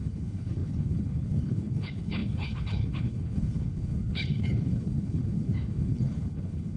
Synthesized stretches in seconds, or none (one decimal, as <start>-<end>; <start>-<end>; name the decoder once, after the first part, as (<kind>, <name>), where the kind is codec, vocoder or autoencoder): 0.0-6.8 (codec, HILCodec)